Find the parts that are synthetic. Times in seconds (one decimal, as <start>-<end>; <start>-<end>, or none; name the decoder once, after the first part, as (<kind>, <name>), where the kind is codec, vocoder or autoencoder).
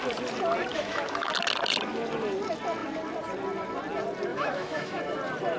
0.7-1.3 (autoencoder, DAC-VAE); 4.3-5.0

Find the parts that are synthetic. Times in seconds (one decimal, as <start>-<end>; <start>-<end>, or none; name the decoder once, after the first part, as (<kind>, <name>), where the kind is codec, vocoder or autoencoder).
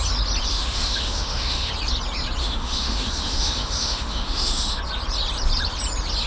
0.5-1.7 (autoencoder, DAC-VAE); 2.4-4.8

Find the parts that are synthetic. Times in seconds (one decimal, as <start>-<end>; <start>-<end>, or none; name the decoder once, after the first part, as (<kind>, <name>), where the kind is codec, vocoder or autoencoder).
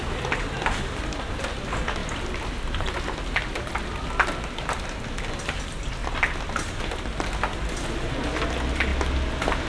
none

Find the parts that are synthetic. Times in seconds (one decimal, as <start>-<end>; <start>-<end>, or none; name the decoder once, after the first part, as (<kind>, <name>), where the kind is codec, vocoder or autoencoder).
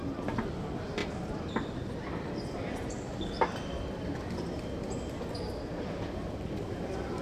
none